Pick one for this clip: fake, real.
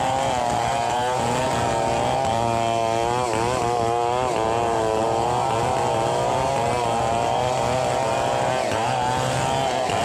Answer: real